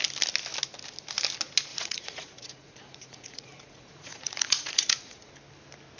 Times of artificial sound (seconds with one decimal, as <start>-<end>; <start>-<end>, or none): 1.7-5.3